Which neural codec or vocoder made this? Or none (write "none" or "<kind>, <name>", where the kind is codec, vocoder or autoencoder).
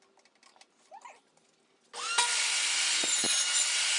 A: none